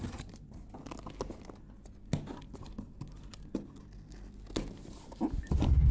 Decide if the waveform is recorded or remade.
recorded